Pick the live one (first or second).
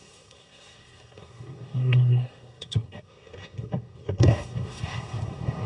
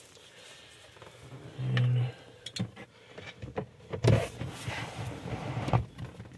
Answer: second